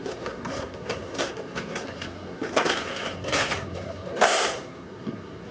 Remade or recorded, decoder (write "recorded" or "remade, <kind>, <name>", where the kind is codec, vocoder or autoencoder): remade, codec, SNAC